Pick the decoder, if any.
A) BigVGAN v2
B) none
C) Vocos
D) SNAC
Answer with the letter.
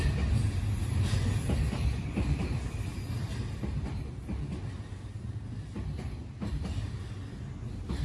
B